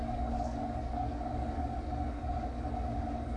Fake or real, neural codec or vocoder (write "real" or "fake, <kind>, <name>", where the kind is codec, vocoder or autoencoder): fake, codec, DAC